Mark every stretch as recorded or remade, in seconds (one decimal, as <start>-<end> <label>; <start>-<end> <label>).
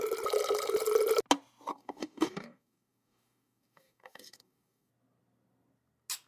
0.0-1.7 recorded; 1.7-4.9 remade; 4.9-6.3 recorded